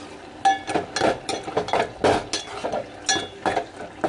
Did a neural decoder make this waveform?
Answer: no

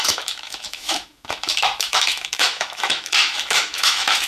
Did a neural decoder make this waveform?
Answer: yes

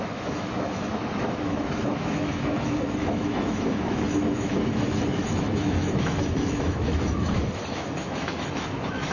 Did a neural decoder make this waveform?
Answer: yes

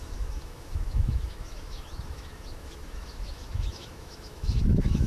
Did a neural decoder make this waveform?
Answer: yes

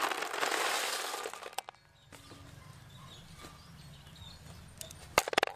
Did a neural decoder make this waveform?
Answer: no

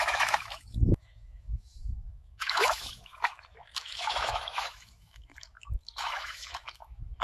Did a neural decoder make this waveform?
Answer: yes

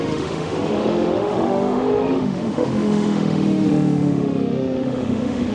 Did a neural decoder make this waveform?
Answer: yes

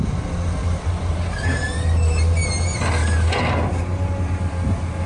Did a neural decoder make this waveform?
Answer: no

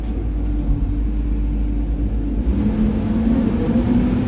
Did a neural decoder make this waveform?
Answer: no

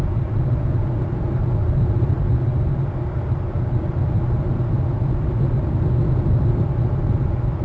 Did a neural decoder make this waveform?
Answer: no